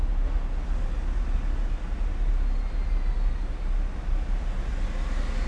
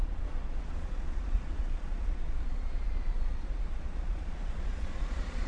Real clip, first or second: first